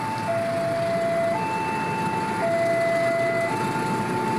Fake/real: real